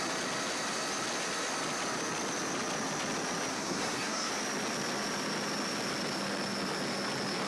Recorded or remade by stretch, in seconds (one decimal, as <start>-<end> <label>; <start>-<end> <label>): 0.0-3.5 recorded; 3.5-4.3 remade; 4.3-7.5 recorded